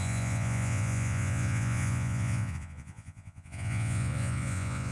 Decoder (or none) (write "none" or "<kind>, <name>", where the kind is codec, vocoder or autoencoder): vocoder, Vocos